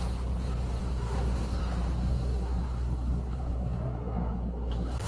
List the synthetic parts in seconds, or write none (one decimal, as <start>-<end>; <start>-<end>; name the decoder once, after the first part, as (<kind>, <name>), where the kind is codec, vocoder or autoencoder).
0.8-1.6 (codec, SNAC); 2.0-5.1